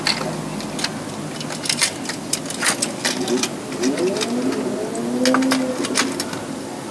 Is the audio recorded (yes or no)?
yes